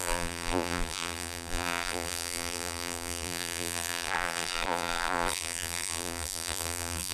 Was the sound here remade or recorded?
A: remade